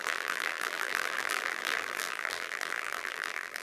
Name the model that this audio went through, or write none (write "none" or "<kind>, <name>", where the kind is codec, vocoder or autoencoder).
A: vocoder, BigVGAN v2